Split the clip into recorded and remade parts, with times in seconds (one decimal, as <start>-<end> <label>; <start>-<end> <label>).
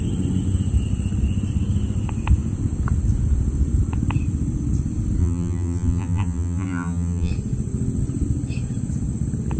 0.0-5.2 recorded; 5.2-7.3 remade; 7.3-9.6 recorded